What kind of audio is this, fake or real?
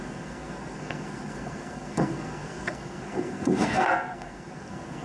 fake